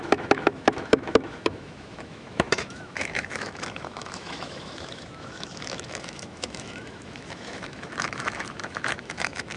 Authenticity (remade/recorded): remade